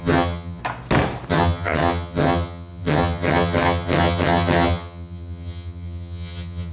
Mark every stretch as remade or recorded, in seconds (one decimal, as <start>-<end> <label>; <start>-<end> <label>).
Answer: 0.0-0.6 remade; 0.6-1.3 recorded; 1.3-6.7 remade